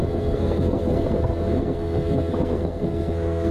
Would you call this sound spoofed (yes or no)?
yes